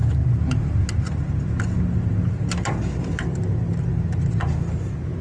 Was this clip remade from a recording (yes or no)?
no